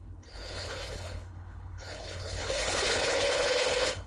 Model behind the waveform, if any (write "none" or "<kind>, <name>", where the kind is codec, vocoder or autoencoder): codec, HILCodec